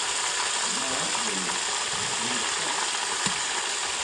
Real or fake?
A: real